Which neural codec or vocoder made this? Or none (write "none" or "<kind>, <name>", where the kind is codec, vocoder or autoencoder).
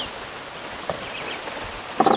none